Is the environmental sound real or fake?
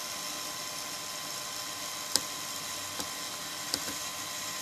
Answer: real